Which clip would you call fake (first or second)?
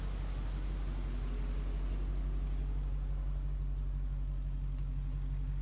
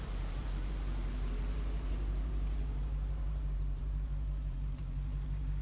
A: second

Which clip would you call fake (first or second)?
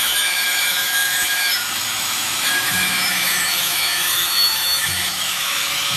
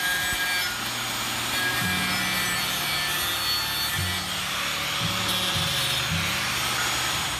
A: first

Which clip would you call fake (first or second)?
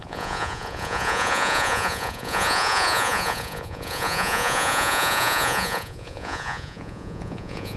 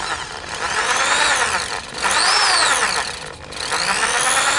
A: first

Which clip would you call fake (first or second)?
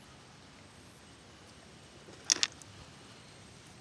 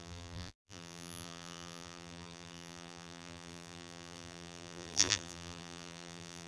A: second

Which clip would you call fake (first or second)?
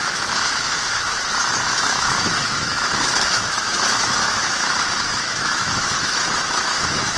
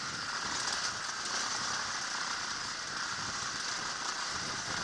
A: first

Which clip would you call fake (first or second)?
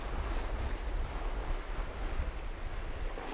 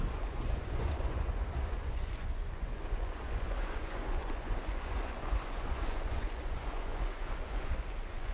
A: second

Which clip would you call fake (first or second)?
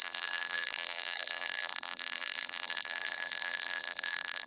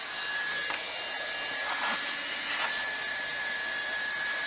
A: first